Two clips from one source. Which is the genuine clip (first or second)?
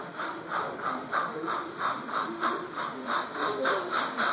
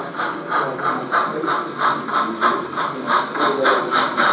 second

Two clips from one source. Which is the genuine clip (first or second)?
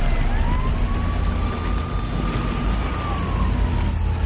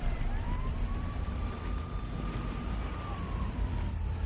first